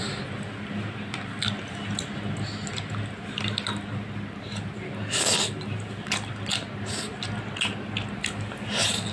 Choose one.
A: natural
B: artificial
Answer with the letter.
A